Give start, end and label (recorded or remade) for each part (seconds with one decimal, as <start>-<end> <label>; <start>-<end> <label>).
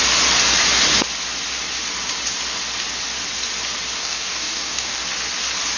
0.0-4.0 recorded; 4.0-5.0 remade; 5.0-5.8 recorded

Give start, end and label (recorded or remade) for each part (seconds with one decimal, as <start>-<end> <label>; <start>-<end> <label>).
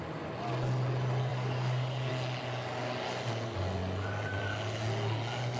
0.0-1.3 recorded; 1.3-2.1 remade; 2.1-5.6 recorded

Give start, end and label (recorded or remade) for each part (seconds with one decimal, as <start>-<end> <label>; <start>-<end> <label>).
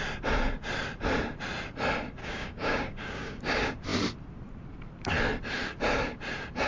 0.0-2.2 recorded; 2.2-3.4 remade; 3.4-6.7 recorded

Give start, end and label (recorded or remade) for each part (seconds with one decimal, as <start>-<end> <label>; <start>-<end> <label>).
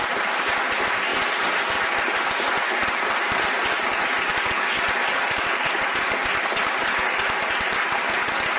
0.0-8.6 recorded